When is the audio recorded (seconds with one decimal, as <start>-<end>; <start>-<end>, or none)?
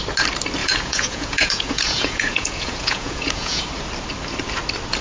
0.0-0.6; 3.6-5.0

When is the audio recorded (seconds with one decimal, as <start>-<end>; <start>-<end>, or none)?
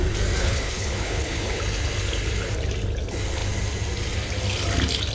0.0-0.4; 1.6-5.1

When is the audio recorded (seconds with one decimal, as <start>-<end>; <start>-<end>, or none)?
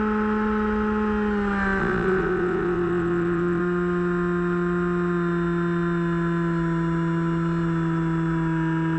0.0-1.8; 3.6-9.0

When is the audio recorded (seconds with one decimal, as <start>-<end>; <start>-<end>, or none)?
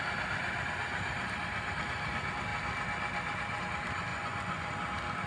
0.0-4.1; 4.7-5.3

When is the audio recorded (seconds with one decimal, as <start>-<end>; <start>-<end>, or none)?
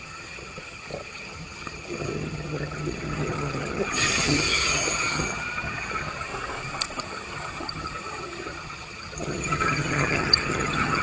6.3-7.0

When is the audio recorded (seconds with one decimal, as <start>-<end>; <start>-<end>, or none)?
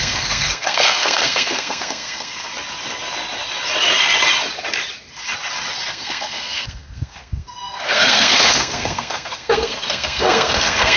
2.5-5.9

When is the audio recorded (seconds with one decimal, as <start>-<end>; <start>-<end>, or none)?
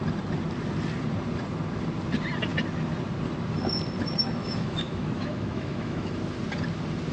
0.0-4.2; 6.2-7.1